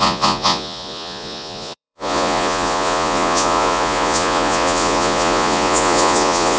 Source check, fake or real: fake